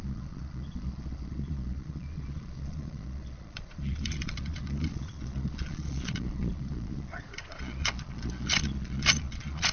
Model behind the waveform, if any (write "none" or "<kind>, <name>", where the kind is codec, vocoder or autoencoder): vocoder, Vocos